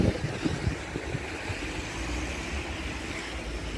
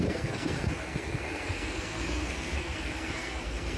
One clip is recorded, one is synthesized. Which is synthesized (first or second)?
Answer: second